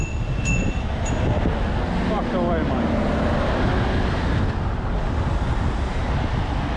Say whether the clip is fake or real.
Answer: real